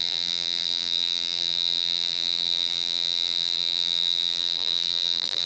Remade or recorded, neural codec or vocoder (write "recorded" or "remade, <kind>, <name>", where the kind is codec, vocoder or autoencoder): remade, vocoder, BigVGAN v2